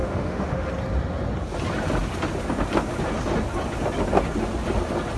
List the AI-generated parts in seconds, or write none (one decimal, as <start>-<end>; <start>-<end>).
0.0-0.7